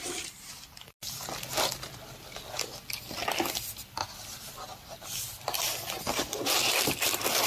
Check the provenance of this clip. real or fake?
real